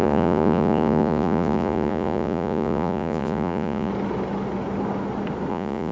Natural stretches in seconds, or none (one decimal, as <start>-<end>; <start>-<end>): 3.9-5.5